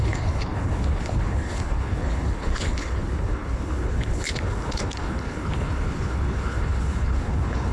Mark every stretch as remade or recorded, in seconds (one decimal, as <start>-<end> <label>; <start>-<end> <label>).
0.0-7.7 remade